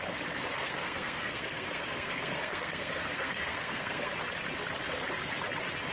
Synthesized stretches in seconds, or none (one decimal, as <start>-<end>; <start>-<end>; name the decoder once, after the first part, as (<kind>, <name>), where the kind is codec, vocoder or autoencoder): 0.6-4.1 (codec, SNAC)